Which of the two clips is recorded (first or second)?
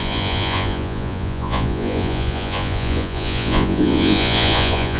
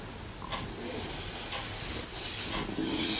second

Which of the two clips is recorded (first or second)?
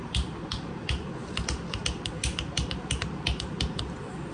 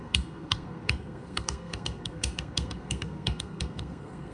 first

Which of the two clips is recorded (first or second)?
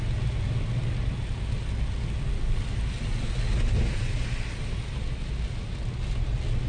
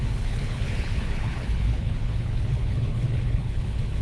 first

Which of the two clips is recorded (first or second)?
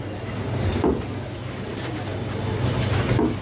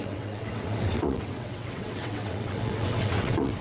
first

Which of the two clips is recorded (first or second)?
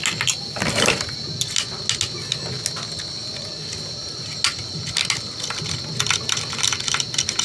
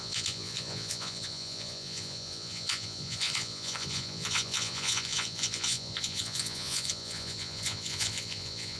first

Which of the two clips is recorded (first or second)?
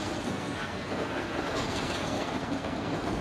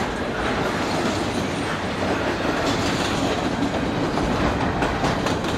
second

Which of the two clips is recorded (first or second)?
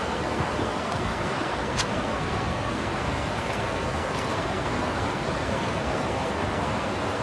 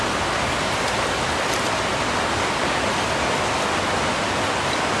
second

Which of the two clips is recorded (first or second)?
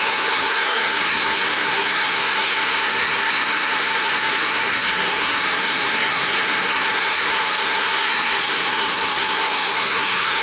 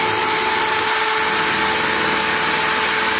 second